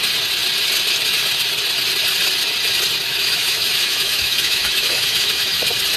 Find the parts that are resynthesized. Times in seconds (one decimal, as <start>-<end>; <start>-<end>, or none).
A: 3.1-5.6